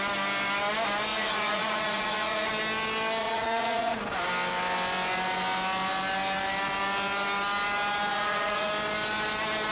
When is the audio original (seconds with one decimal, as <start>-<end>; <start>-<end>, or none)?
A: 0.0-1.1; 2.5-3.2; 4.0-8.1; 8.7-9.7